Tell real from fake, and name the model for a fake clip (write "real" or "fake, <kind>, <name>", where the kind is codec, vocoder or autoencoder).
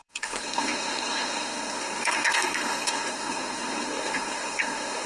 fake, codec, SNAC